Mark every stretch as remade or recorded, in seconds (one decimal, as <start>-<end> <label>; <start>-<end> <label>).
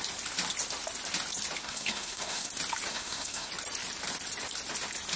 0.0-1.6 recorded; 1.6-2.5 remade; 2.5-2.9 recorded; 2.9-3.5 remade; 3.5-5.2 recorded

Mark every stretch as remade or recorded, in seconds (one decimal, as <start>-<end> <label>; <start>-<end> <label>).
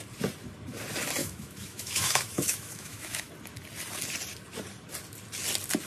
0.0-1.2 recorded; 1.2-3.3 remade; 3.3-5.9 recorded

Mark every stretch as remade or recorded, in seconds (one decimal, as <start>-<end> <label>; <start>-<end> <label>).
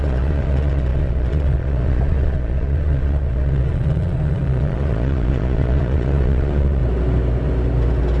0.0-6.8 remade; 6.8-8.2 recorded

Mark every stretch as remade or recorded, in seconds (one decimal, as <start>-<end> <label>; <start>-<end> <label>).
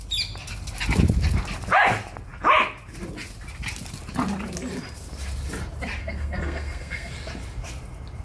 0.0-6.0 recorded; 6.0-7.1 remade; 7.1-8.2 recorded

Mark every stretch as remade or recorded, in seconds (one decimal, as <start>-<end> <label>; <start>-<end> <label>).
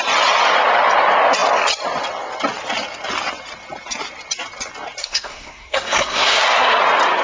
0.0-5.0 recorded; 5.0-6.8 remade; 6.8-7.2 recorded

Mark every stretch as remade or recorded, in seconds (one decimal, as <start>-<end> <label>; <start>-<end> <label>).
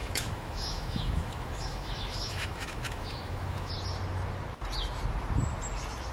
0.0-3.7 remade; 3.7-6.1 recorded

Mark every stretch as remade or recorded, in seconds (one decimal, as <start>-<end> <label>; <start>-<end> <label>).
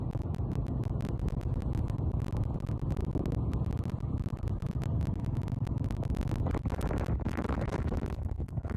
0.0-7.2 recorded; 7.2-8.8 remade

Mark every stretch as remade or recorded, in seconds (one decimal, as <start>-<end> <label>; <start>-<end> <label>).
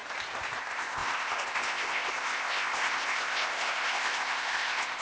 0.0-0.6 recorded; 0.6-5.0 remade